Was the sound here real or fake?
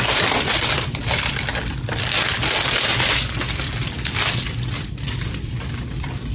fake